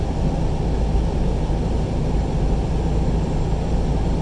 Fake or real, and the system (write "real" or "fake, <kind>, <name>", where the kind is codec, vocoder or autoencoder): real